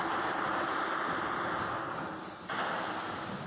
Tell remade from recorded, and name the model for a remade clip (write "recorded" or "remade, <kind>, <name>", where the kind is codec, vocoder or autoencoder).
recorded